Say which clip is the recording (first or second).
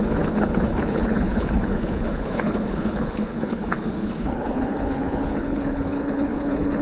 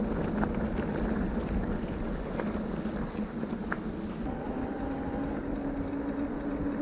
second